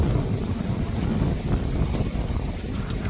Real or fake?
real